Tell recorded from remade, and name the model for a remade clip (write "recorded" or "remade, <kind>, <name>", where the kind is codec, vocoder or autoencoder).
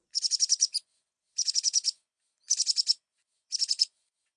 remade, vocoder, Vocos